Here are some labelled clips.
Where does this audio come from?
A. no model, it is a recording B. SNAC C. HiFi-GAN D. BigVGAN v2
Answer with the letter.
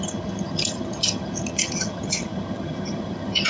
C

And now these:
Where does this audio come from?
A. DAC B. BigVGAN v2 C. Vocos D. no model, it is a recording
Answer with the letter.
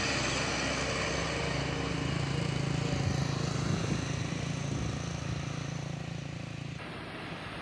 D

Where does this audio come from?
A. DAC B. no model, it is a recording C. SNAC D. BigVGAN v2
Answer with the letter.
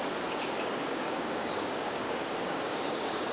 A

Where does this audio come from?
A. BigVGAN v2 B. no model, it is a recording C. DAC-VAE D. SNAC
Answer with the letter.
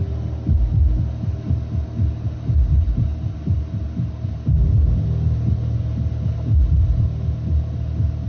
B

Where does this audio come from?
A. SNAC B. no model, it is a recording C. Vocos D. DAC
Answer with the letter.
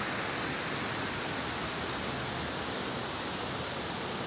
B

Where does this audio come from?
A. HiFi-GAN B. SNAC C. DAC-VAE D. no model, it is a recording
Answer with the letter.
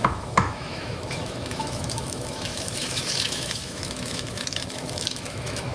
C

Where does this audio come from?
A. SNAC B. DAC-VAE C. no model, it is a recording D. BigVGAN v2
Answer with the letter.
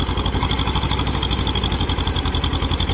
C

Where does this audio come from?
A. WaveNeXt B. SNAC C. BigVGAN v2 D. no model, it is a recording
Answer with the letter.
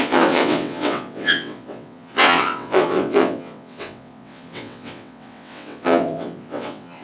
A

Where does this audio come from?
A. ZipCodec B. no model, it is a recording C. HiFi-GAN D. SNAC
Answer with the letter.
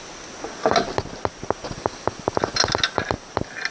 B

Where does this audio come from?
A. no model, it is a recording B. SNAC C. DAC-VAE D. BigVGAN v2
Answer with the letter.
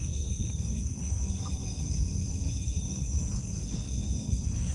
B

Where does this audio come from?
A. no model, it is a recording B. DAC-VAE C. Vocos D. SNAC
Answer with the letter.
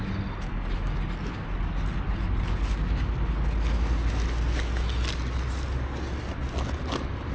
A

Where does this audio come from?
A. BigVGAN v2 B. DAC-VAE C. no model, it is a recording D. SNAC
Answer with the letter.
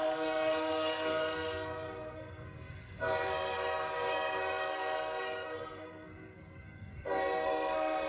D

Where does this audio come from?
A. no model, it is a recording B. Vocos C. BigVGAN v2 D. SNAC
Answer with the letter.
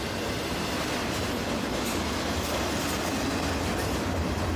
A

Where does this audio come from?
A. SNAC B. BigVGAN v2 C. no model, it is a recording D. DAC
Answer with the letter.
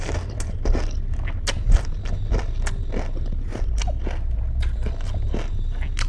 C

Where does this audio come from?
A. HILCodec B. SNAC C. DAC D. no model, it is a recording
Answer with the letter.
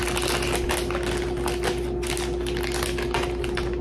D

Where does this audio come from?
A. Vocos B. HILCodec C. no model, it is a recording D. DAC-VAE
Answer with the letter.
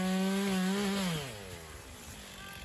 C